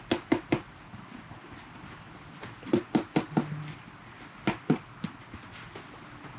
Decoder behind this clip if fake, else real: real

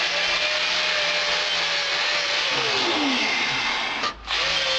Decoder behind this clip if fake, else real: real